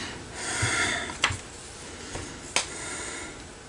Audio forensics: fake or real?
real